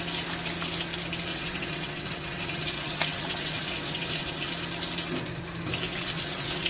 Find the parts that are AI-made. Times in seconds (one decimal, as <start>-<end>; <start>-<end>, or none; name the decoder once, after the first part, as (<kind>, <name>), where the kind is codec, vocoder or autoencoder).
1.3-4.5 (vocoder, WaveNeXt); 5.9-6.7